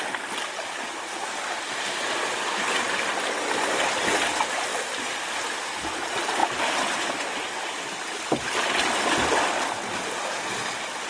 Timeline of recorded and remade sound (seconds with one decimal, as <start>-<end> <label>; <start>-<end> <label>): 0.0-11.1 recorded